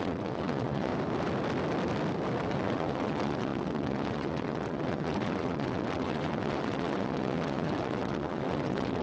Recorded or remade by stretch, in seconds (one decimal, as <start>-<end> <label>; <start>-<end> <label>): 0.0-0.9 remade; 0.9-2.5 recorded; 2.5-9.0 remade